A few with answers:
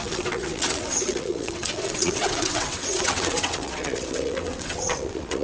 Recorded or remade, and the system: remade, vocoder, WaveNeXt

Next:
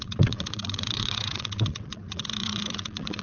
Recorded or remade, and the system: remade, vocoder, WaveNeXt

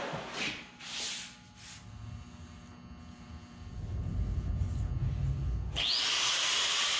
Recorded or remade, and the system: recorded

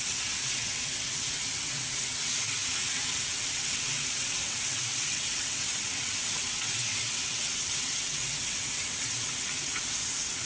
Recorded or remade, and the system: remade, vocoder, WaveNeXt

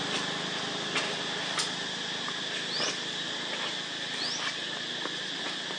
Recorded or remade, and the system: recorded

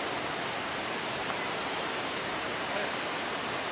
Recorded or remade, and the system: recorded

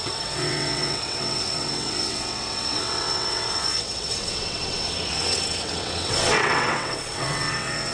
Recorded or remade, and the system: remade, vocoder, WaveNeXt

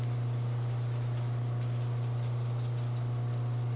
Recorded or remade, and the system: recorded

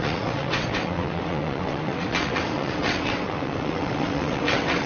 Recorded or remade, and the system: remade, vocoder, WaveNeXt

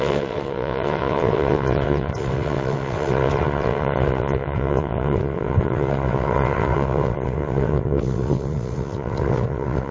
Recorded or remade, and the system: remade, vocoder, WaveNeXt